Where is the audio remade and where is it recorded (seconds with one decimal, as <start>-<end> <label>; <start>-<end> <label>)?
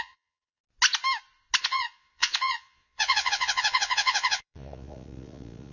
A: 0.0-0.6 remade; 0.6-1.6 recorded; 1.6-5.7 remade